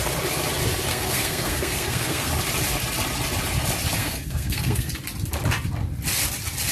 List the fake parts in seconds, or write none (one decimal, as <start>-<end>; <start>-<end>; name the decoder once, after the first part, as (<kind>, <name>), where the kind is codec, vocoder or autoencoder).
0.9-2.3 (codec, SNAC); 4.0-4.9